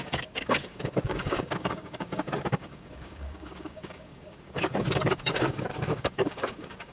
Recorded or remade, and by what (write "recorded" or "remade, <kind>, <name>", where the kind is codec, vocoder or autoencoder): remade, codec, DAC